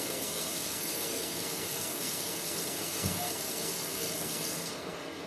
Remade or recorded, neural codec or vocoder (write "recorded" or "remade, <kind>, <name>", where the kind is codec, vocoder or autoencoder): remade, codec, SNAC